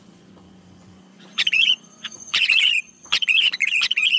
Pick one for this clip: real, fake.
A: fake